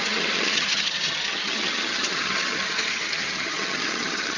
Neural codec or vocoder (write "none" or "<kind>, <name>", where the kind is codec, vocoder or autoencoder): vocoder, HiFi-GAN